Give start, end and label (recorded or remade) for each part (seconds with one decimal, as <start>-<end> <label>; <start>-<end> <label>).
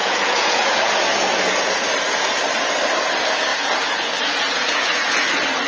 0.0-0.8 remade; 0.8-3.5 recorded; 3.5-5.3 remade; 5.3-5.7 recorded